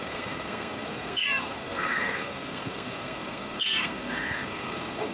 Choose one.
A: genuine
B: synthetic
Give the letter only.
B